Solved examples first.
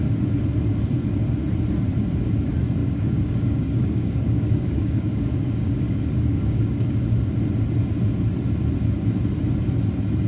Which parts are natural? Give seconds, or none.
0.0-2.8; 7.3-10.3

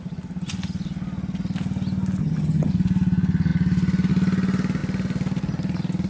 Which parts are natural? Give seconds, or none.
0.0-2.2; 2.7-6.1

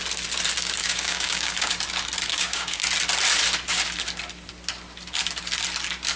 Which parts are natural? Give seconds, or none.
0.0-0.8; 1.7-2.3; 2.8-6.2

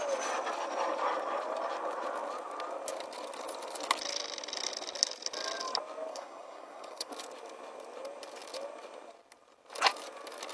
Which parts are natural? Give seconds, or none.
0.0-6.1; 7.1-10.5

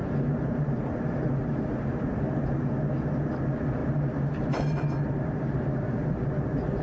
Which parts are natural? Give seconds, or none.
2.5-3.8; 6.2-6.8

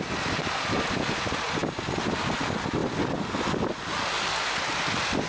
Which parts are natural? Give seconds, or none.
0.0-5.3

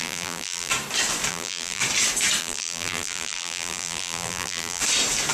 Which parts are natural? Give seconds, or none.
0.7-1.3; 1.8-2.4; 4.8-5.3